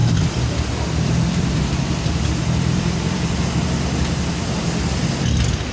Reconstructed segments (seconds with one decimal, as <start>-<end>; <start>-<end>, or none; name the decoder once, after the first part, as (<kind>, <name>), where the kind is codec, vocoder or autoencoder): 0.0-3.4 (vocoder, BigVGAN v2)